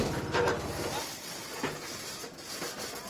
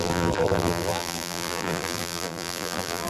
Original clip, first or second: first